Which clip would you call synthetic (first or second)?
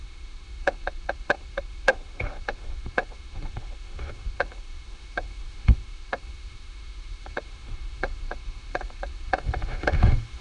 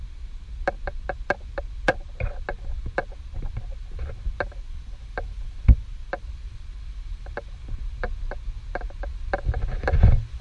first